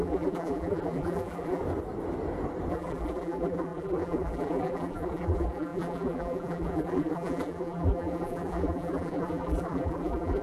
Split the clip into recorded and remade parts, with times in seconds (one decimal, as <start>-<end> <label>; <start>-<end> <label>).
0.0-1.6 remade; 1.6-2.7 recorded; 2.7-10.4 remade